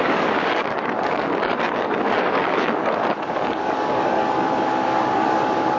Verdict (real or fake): fake